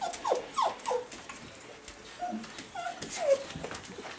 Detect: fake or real real